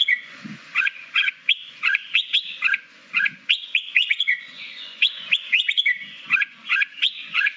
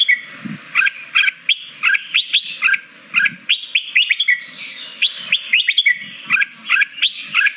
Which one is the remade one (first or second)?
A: first